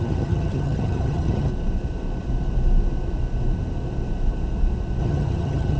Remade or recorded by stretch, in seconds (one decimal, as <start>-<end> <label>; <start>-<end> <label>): 0.0-1.5 remade; 1.5-5.0 recorded; 5.0-5.8 remade